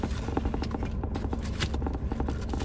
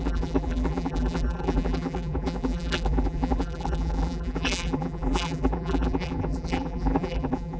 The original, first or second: first